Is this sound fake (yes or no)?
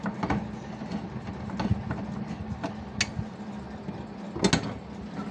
no